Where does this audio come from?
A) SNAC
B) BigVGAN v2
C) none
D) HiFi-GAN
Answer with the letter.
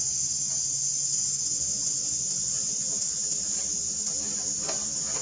C